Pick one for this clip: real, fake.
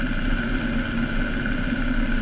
real